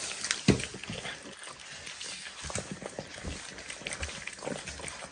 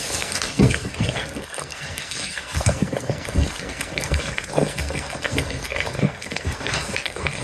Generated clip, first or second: second